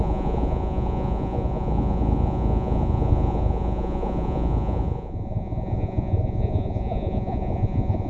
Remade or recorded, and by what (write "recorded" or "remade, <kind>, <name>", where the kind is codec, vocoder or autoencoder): remade, vocoder, Vocos